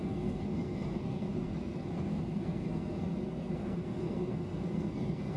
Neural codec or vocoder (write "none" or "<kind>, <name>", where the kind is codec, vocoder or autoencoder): codec, SNAC